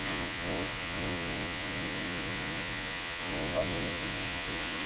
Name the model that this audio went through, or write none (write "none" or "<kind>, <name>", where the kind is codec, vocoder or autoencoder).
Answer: vocoder, Vocos